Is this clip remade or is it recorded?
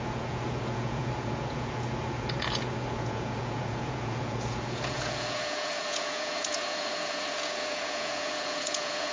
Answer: remade